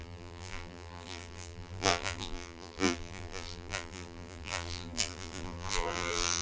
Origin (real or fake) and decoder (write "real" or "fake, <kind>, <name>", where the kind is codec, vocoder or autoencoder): fake, vocoder, BigVGAN v2